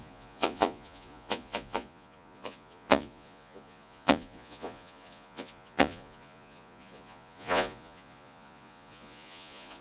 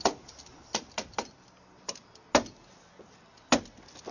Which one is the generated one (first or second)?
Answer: first